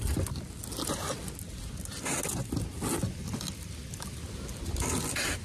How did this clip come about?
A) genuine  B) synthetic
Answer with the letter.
A